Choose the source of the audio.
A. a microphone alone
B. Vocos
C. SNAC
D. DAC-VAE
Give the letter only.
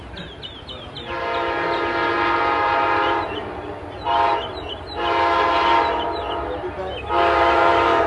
A